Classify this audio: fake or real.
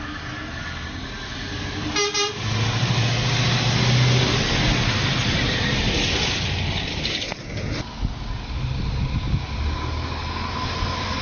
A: real